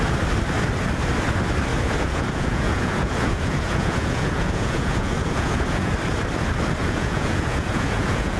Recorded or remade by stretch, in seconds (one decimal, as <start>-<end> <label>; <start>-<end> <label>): 0.0-1.7 recorded; 1.7-5.9 remade; 5.9-6.8 recorded; 6.8-8.4 remade